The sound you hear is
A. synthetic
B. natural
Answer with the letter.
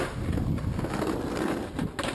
B